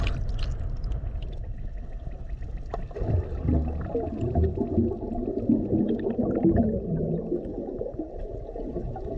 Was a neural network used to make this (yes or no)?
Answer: no